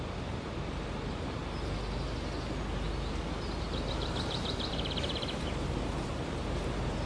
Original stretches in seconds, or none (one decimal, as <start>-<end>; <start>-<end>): 1.4-3.9